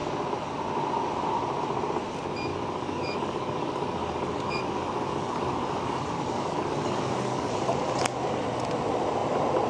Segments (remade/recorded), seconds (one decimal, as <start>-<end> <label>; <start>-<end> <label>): 0.0-2.5 recorded; 2.5-7.5 remade; 7.5-9.7 recorded